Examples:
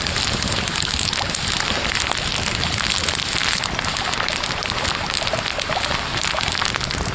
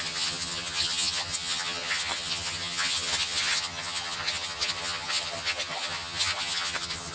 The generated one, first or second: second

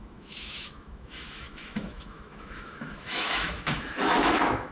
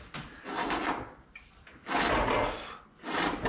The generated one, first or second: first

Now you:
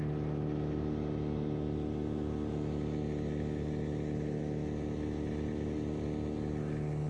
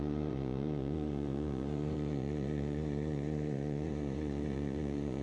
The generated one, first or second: second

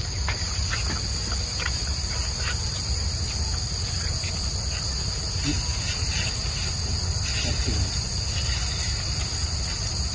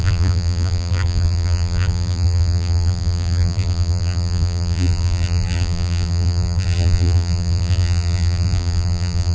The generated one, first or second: second